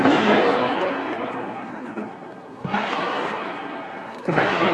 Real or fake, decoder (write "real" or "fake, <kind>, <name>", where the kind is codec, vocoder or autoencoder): fake, codec, SNAC